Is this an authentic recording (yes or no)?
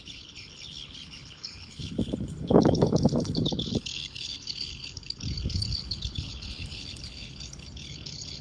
no